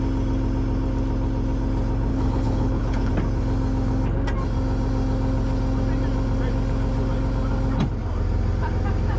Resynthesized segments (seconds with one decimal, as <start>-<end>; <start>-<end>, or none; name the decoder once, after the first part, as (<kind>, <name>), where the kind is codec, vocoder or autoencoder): 2.1-3.1 (codec, HILCodec)